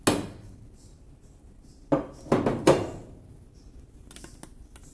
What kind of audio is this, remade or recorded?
recorded